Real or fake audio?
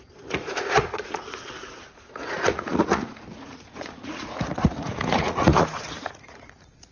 fake